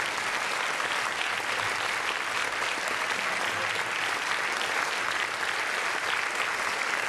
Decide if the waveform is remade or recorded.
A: recorded